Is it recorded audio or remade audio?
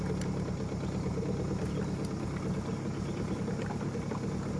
recorded